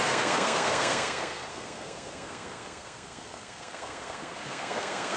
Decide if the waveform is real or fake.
fake